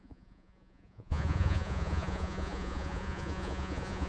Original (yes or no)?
no